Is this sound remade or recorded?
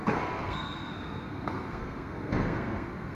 remade